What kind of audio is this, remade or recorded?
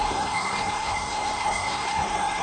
remade